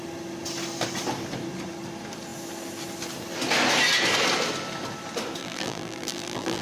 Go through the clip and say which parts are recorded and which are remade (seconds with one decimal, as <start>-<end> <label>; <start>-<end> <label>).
0.0-5.4 recorded; 5.4-6.6 remade